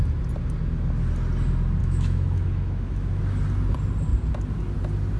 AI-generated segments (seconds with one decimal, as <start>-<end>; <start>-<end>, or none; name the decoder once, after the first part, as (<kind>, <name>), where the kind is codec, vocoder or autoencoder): 1.8-3.2 (autoencoder, DAC-VAE)